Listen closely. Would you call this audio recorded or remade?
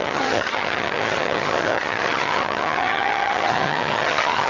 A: remade